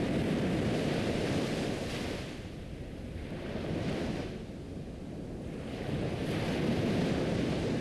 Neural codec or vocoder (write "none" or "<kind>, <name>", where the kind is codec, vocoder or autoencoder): none